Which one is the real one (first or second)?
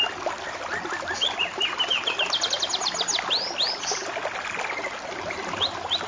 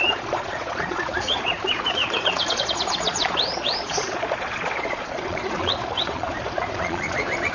first